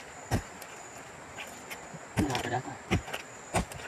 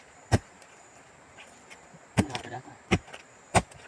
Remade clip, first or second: second